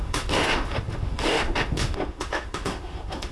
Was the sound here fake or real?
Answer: fake